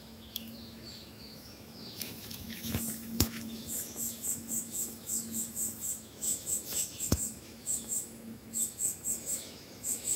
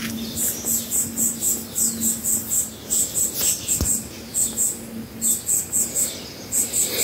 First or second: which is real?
second